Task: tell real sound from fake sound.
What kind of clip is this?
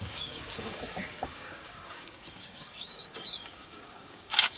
fake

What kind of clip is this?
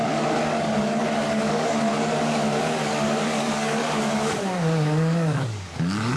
fake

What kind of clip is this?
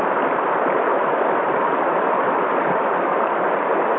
real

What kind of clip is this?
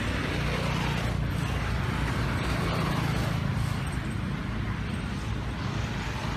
real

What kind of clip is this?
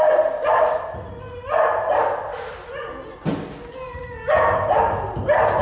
real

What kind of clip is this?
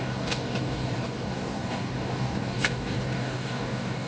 fake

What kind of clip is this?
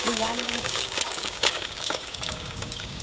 fake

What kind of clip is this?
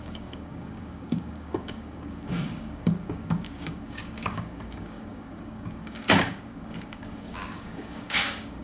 fake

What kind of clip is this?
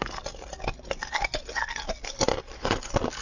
real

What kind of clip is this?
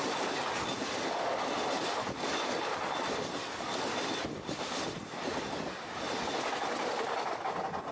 real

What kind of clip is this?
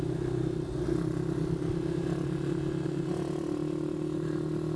real